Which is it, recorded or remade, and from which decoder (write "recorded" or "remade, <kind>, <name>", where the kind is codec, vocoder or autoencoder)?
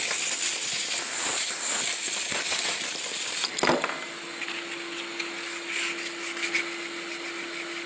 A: recorded